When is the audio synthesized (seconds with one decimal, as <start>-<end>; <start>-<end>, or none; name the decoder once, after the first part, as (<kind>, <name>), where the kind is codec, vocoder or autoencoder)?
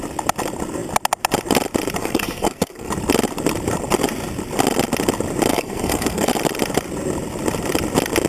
2.0-2.9 (codec, SNAC); 5.5-6.3